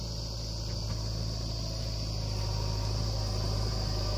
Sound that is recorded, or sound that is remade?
recorded